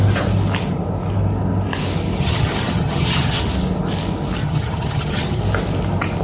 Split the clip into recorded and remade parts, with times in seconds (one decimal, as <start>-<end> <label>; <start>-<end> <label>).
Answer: 0.0-2.2 recorded; 2.2-3.4 remade; 3.4-4.4 recorded; 4.4-5.4 remade; 5.4-6.2 recorded